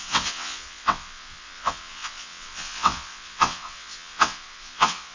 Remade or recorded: remade